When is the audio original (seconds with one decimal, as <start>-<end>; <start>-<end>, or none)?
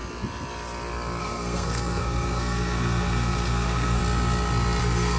0.0-1.2; 4.0-4.8